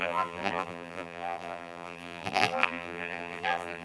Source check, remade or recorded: remade